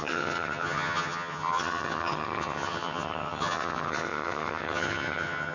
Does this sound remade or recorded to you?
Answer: remade